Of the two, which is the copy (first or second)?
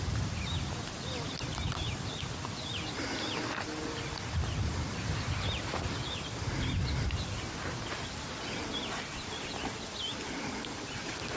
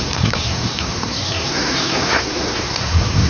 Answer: second